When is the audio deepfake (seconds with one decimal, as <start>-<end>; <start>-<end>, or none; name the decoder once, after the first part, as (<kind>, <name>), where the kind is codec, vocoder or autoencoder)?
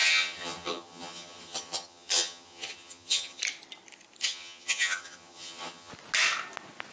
0.0-3.4 (vocoder, HiFi-GAN); 4.2-5.9